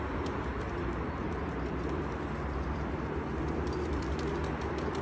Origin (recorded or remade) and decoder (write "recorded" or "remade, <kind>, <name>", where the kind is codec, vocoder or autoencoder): recorded